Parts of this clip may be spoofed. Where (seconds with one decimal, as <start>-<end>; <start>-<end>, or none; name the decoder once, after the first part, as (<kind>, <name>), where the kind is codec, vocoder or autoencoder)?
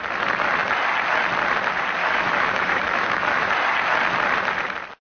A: 2.0-3.5 (autoencoder, DAC-VAE)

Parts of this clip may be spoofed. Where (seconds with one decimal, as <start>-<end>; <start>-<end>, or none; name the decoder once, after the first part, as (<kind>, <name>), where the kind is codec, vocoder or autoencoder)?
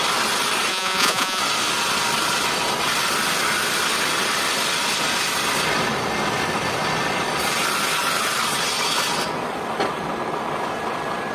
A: 0.7-1.4 (vocoder, Vocos)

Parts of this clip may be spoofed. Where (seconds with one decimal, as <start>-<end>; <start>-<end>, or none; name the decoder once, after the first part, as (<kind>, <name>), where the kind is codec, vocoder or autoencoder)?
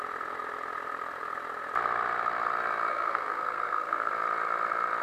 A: 2.9-4.1 (codec, SNAC)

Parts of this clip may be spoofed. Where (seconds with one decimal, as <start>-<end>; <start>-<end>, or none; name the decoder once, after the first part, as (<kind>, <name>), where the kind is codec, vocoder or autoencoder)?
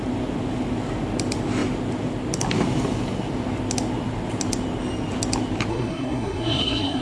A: 5.7-7.0 (codec, SNAC)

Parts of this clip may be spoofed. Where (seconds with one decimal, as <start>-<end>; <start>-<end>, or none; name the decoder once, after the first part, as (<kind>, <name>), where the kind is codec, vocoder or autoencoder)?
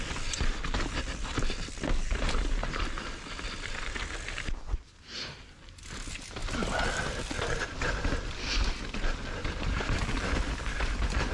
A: none